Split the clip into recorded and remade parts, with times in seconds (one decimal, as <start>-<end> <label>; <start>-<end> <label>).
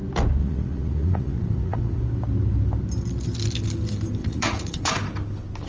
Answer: 0.0-0.4 recorded; 0.4-2.0 remade; 2.0-4.2 recorded; 4.2-4.9 remade; 4.9-5.7 recorded